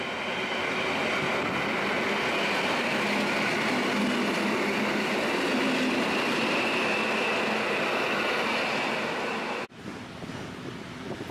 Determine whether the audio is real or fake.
real